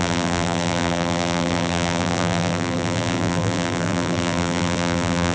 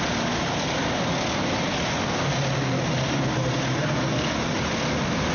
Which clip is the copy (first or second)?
first